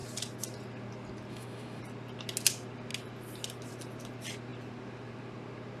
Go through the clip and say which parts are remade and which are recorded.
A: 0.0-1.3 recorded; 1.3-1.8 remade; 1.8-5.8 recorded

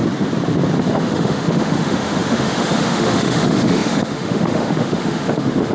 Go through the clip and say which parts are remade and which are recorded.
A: 0.0-0.9 recorded; 0.9-5.7 remade

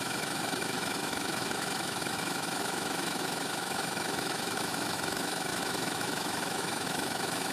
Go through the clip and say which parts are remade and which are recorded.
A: 0.0-7.5 remade

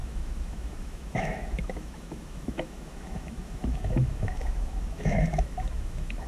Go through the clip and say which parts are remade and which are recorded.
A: 0.0-6.3 remade

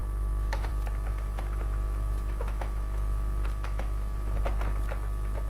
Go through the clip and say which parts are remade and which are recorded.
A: 0.0-0.7 remade; 0.7-1.1 recorded; 1.1-4.4 remade; 4.4-5.5 recorded

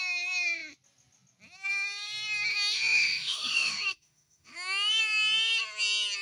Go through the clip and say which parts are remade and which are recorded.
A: 0.0-2.5 recorded; 2.5-5.0 remade; 5.0-6.2 recorded

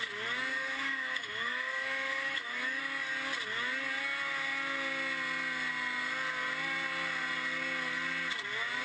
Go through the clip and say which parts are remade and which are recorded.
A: 0.0-0.5 recorded; 0.5-2.8 remade; 2.8-8.8 recorded